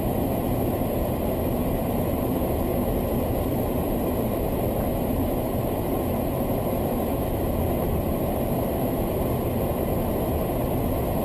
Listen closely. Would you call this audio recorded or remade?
recorded